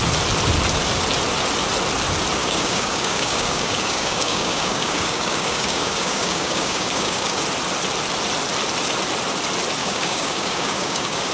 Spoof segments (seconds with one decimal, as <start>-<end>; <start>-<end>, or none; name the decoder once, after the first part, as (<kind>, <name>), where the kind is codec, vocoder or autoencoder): 2.4-7.4 (codec, DAC); 9.8-11.3